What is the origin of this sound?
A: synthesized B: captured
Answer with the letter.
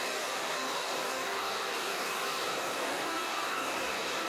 A